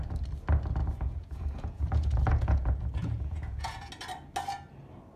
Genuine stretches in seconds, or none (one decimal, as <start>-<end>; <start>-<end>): 0.0-0.8; 3.9-5.2